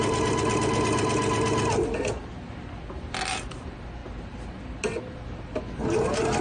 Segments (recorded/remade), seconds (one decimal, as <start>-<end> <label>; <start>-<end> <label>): 0.0-6.4 recorded